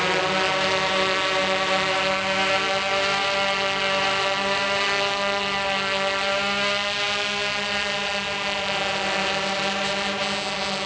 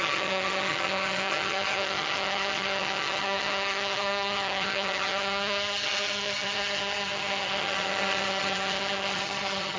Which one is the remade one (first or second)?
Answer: second